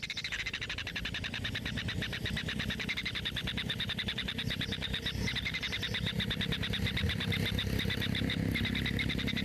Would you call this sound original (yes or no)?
yes